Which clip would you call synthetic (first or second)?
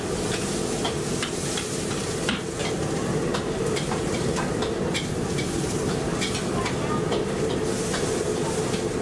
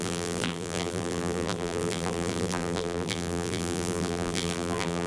second